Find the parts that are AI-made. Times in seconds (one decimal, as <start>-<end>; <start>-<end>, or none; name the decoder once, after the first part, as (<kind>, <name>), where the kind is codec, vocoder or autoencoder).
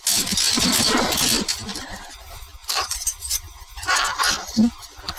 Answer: 1.7-4.2 (vocoder, BigVGAN v2)